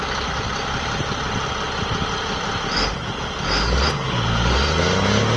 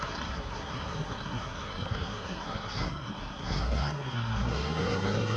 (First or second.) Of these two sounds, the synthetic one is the second